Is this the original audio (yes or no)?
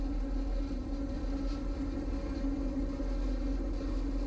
yes